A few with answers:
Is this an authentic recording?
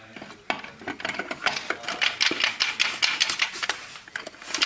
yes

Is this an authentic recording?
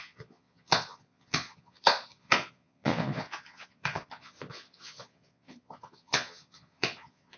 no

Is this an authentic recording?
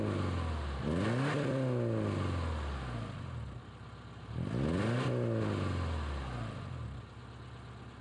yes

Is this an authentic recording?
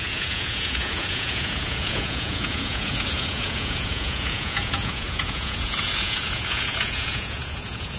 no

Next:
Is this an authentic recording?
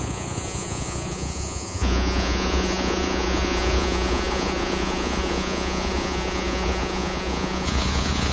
no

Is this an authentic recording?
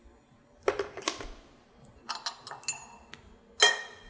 yes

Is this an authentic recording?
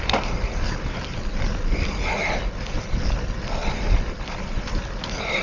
yes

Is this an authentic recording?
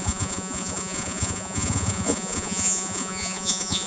no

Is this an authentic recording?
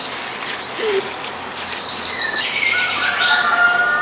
yes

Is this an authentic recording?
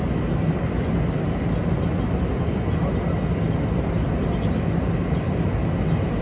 yes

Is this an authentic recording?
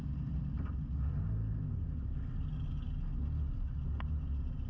yes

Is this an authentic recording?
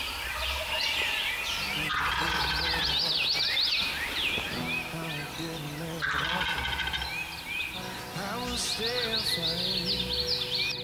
yes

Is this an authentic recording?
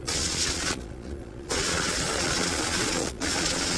no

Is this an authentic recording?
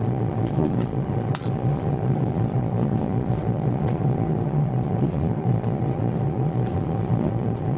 no